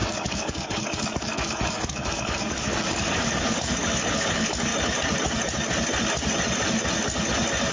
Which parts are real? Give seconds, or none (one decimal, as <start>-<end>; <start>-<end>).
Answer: 4.7-7.7